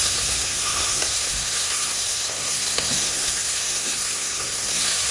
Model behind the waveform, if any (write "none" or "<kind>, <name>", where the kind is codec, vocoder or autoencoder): codec, SNAC